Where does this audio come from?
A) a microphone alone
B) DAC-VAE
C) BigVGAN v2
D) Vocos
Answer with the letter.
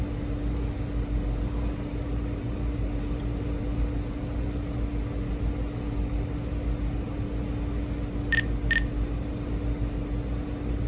A